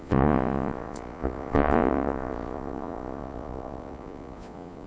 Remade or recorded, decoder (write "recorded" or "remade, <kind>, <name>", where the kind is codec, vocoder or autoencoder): remade, vocoder, Vocos